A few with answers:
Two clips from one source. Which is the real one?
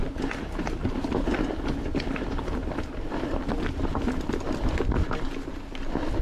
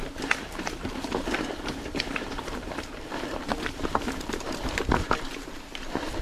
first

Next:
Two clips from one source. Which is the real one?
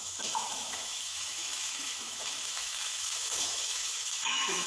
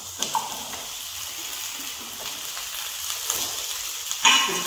second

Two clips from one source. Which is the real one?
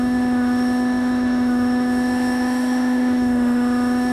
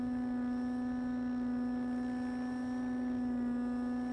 second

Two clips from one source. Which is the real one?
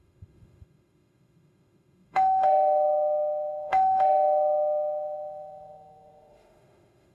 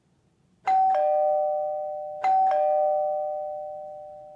second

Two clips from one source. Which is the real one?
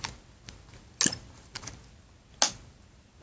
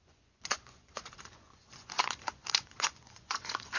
first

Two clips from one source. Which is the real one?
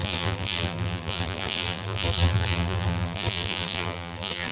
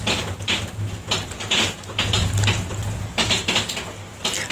second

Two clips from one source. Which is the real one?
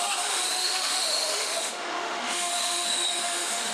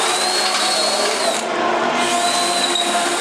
second